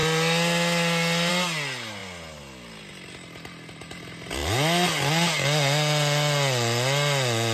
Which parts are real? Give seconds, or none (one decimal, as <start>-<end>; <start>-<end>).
0.0-7.5